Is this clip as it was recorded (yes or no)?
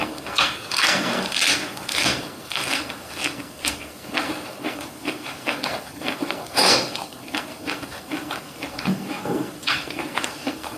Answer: no